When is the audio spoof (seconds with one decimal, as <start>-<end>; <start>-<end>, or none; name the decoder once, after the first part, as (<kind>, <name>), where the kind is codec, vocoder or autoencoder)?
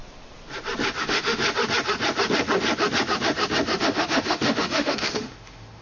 1.0-1.4 (autoencoder, DAC-VAE); 3.8-5.8